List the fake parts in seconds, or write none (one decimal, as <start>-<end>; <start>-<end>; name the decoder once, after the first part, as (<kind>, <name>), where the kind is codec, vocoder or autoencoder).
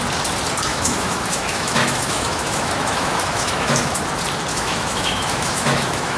0.7-4.0 (autoencoder, DAC-VAE); 4.5-6.2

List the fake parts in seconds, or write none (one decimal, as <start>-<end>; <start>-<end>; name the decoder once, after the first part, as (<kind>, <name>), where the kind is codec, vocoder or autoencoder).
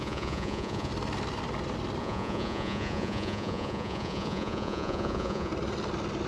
0.0-0.9 (vocoder, Vocos); 2.0-5.5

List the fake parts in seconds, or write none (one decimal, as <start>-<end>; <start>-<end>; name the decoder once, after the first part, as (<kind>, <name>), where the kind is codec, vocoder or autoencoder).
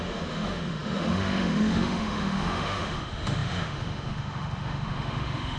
0.0-5.6 (autoencoder, DAC-VAE)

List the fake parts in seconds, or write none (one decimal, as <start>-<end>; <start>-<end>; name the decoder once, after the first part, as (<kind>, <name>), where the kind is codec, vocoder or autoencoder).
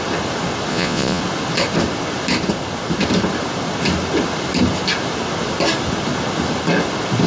0.7-1.2 (vocoder, Vocos)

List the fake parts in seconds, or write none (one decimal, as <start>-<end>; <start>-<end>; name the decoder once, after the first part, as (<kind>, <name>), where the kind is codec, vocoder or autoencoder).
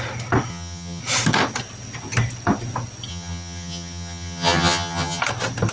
0.5-1.0 (vocoder, HiFi-GAN); 3.1-5.2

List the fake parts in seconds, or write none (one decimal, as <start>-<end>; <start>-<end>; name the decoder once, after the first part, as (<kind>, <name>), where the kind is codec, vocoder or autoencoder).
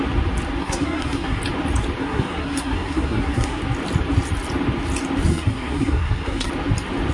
0.6-1.4 (codec, SNAC); 2.0-3.6; 5.3-6.5